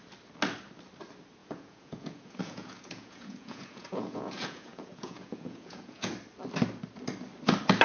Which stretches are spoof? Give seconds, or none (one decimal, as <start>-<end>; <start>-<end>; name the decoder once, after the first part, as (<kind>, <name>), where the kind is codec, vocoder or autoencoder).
1.4-6.1 (vocoder, Vocos)